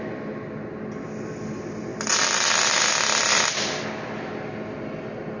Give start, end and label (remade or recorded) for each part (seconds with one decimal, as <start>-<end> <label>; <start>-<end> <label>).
0.0-5.4 recorded